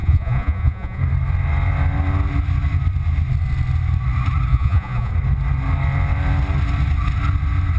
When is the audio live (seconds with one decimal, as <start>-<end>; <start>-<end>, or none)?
1.0-4.5; 5.1-7.8